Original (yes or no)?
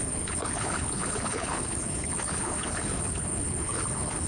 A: no